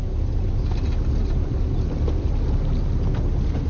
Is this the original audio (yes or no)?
yes